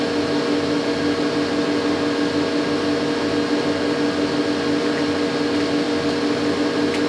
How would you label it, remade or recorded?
recorded